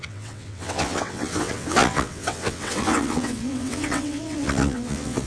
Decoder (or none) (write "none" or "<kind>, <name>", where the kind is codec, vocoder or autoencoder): vocoder, WaveNeXt